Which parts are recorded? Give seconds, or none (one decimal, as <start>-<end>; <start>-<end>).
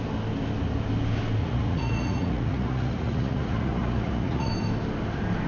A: 0.0-1.4; 4.5-5.5